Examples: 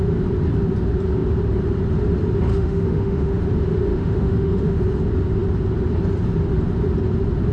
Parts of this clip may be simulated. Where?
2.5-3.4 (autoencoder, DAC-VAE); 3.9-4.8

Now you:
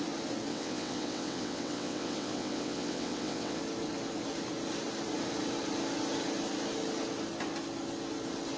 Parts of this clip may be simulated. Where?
0.5-3.6 (vocoder, WaveNeXt)

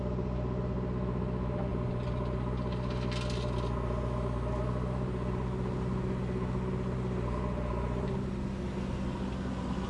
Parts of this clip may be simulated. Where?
none

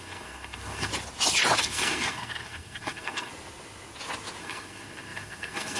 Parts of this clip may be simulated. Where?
0.0-0.9 (codec, SNAC); 1.6-3.3; 4.4-5.8

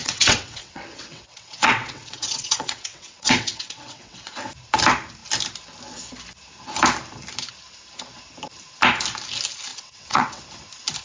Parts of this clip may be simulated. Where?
0.0-4.5 (vocoder, WaveNeXt); 9.7-10.4

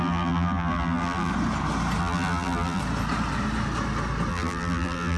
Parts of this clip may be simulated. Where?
0.0-1.3 (vocoder, BigVGAN v2); 2.0-2.8; 4.3-5.2

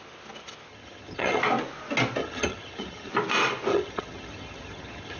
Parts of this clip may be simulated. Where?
0.7-1.4 (vocoder, HiFi-GAN); 2.2-3.1; 3.7-5.2

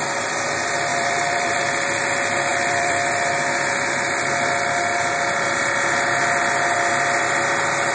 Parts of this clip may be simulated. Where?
0.9-1.6 (vocoder, BigVGAN v2); 2.5-3.3